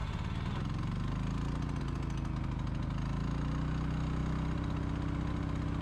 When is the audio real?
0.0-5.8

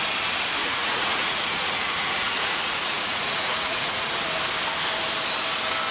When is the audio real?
0.0-0.6; 4.1-5.9

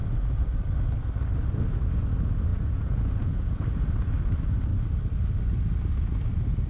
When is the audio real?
0.0-2.5; 3.6-6.7

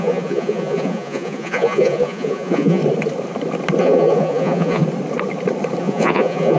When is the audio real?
2.8-3.8; 4.8-5.8